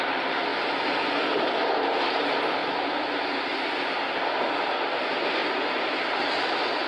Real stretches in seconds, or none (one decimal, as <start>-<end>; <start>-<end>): 0.0-6.9